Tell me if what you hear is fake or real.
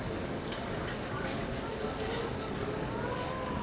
fake